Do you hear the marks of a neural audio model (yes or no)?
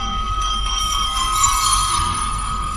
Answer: yes